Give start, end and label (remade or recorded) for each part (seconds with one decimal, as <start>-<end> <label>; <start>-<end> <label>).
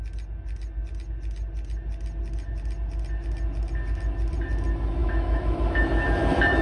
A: 0.0-5.0 recorded; 5.0-6.6 remade